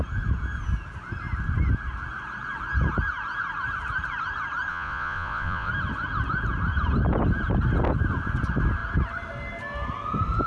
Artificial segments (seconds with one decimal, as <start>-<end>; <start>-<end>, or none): 4.7-5.7